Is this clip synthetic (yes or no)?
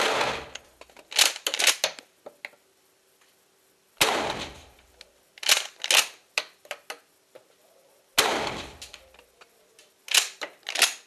no